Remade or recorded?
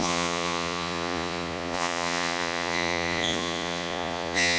remade